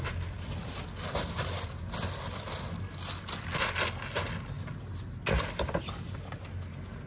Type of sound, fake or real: real